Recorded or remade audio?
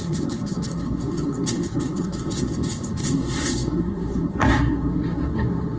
remade